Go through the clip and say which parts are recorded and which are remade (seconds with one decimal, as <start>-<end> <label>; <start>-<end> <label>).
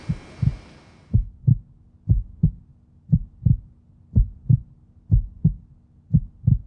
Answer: 0.0-6.7 recorded